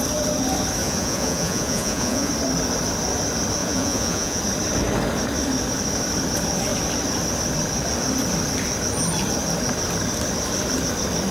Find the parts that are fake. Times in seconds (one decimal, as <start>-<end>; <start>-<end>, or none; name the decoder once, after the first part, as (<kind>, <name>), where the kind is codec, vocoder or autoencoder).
0.8-2.3 (vocoder, Vocos); 3.6-4.4